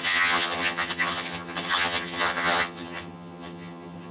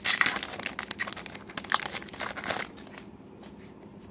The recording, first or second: second